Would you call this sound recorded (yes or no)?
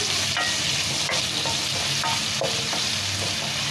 yes